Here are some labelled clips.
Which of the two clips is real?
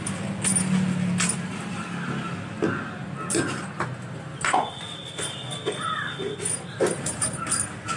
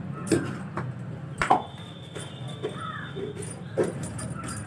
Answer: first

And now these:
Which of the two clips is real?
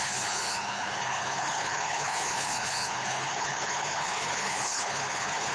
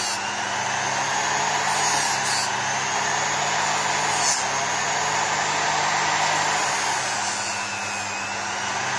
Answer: second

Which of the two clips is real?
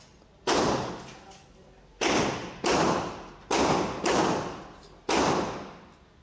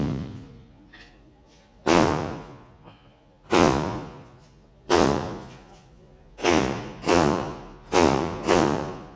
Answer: first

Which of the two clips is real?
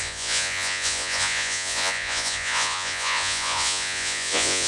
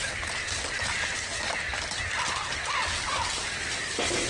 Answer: second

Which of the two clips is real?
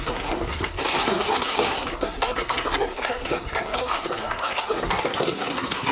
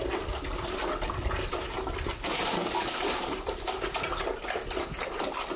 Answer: second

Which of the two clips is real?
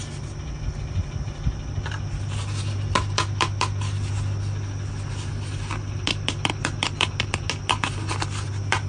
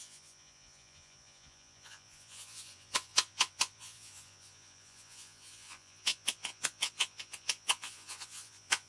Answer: first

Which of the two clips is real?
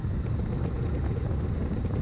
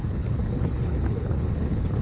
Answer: first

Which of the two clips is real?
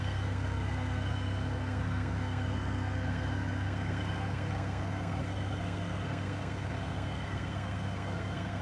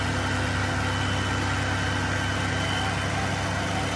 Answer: second